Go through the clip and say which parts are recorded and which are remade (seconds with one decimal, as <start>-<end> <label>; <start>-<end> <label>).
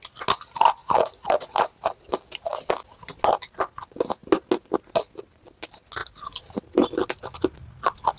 0.0-0.8 recorded; 0.8-1.6 remade; 1.6-8.2 recorded